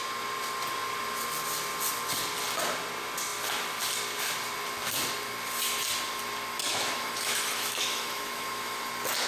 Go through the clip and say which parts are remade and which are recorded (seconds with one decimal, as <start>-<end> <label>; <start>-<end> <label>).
0.0-6.6 recorded; 6.6-8.8 remade; 8.8-9.3 recorded